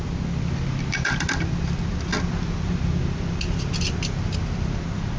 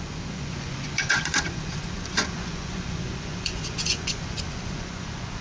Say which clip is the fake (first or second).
second